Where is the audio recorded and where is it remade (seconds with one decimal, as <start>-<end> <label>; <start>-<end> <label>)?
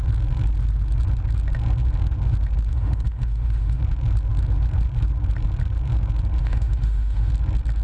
0.0-2.7 recorded; 2.7-3.8 remade; 3.8-6.4 recorded; 6.4-7.3 remade; 7.3-7.8 recorded